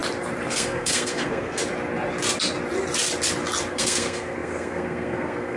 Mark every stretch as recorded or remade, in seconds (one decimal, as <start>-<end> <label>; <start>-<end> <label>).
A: 0.0-0.5 recorded; 0.5-1.6 remade; 1.6-3.7 recorded; 3.7-5.6 remade